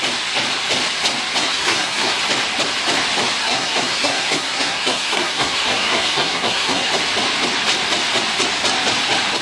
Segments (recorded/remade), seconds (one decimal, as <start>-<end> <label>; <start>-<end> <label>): 0.0-1.4 recorded; 1.4-2.2 remade; 2.2-3.4 recorded; 3.4-6.9 remade; 6.9-9.4 recorded